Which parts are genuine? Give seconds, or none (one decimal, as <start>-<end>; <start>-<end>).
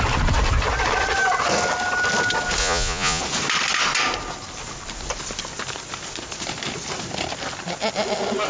0.0-2.6; 3.2-8.5